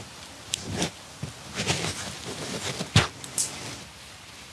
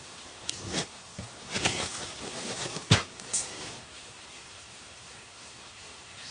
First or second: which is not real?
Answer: second